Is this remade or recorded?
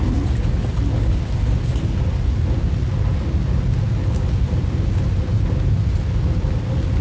recorded